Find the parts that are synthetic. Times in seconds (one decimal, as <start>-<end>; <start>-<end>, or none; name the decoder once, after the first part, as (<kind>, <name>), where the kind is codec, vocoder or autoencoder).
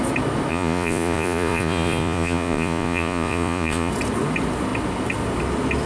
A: 0.5-3.9 (vocoder, Vocos)